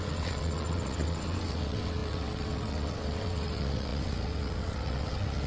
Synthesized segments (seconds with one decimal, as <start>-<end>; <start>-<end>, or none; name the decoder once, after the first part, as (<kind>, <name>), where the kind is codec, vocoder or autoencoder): 0.0-5.5 (vocoder, WaveNeXt)